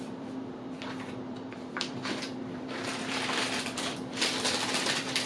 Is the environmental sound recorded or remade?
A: remade